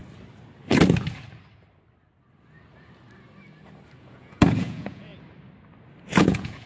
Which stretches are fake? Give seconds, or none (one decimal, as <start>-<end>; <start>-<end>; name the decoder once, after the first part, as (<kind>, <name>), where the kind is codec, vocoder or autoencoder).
4.0-5.1 (vocoder, Vocos); 6.2-6.7